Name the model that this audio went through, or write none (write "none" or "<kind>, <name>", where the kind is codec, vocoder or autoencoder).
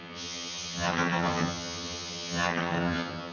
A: vocoder, HiFi-GAN